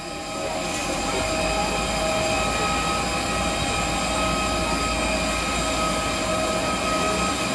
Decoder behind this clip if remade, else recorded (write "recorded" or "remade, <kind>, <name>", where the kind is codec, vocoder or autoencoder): recorded